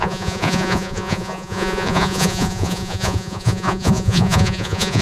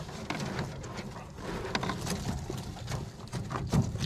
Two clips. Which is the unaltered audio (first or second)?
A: second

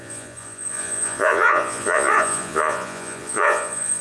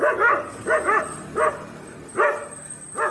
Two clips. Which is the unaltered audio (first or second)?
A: second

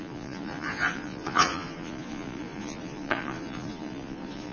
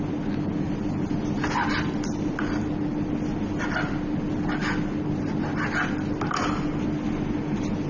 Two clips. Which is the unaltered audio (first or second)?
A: second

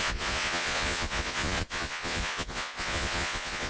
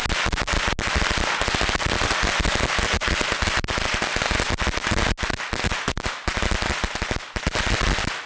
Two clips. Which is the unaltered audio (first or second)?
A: second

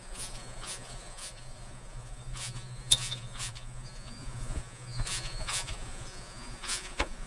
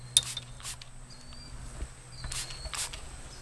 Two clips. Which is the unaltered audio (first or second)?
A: second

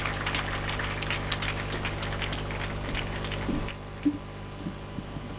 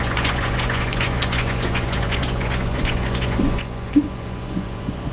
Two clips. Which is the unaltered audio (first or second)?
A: first